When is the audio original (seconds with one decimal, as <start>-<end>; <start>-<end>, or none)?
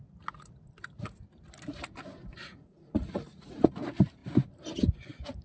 0.0-2.4; 3.7-5.4